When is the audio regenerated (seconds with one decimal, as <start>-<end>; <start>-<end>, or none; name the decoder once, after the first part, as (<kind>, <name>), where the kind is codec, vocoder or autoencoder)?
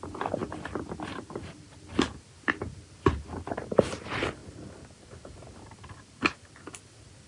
4.4-6.4 (vocoder, BigVGAN v2)